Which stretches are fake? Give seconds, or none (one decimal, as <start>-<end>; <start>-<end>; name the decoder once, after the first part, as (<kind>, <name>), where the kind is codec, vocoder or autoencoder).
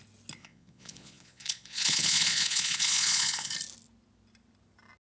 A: 0.4-3.5 (vocoder, Vocos)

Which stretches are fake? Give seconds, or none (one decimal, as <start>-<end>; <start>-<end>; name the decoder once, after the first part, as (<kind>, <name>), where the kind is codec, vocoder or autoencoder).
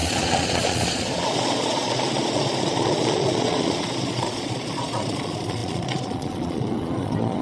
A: 0.0-7.4 (vocoder, Vocos)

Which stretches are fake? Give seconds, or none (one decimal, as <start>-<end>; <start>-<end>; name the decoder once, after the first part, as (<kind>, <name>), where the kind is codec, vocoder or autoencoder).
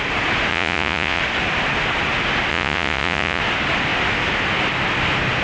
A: 0.5-1.2 (vocoder, Vocos); 2.5-3.4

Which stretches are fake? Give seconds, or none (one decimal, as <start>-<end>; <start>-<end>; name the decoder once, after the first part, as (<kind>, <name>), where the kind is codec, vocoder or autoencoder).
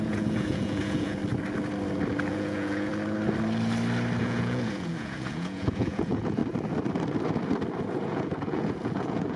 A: 0.0-1.2 (vocoder, Vocos); 2.3-2.9; 4.2-6.4; 7.8-9.4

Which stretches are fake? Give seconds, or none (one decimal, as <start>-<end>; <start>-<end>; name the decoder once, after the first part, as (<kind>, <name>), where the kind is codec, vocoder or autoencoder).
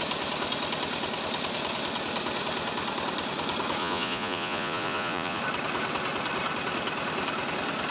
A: 3.8-5.4 (vocoder, Vocos)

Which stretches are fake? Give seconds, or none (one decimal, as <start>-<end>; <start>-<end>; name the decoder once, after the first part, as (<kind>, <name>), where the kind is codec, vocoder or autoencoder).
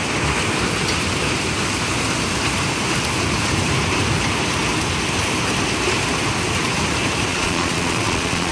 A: 7.3-8.5 (vocoder, Vocos)